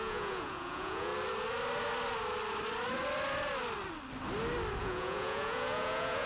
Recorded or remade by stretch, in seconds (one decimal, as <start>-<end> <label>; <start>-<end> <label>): 0.0-1.1 remade; 1.1-4.8 recorded; 4.8-6.3 remade